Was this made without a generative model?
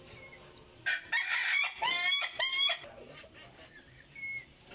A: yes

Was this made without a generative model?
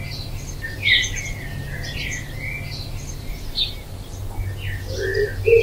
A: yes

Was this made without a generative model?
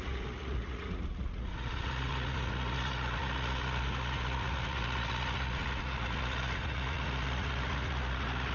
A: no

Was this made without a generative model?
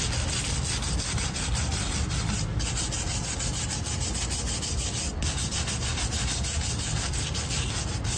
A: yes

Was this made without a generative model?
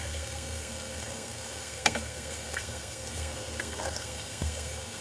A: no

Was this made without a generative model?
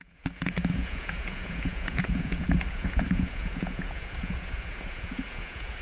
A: no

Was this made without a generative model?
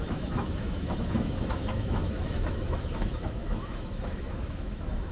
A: no